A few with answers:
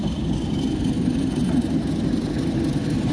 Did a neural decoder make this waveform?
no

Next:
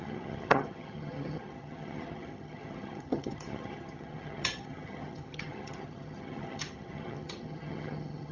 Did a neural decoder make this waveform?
yes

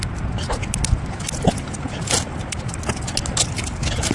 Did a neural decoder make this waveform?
no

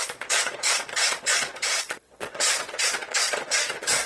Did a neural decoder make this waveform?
yes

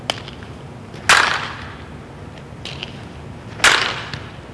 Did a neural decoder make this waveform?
no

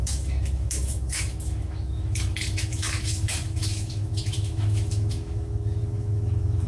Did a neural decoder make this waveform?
yes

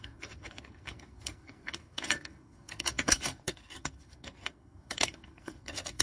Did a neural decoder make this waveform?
yes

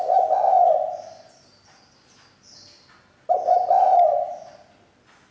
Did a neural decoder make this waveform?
no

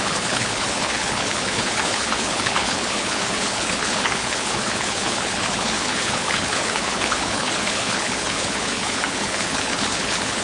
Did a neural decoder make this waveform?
yes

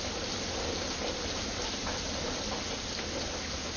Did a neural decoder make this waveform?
no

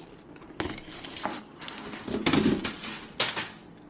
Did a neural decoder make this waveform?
no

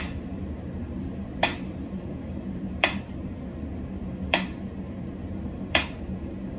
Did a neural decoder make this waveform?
yes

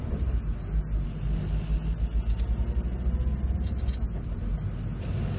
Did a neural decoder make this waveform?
no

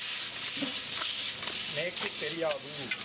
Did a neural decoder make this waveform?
no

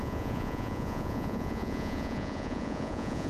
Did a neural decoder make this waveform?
yes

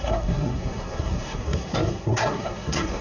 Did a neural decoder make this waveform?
yes